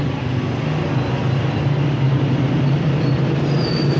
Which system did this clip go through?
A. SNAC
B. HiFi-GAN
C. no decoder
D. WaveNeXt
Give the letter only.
C